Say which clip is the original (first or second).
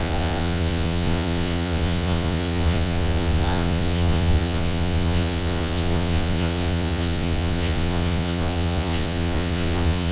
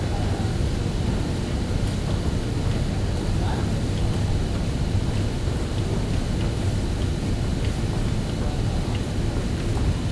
second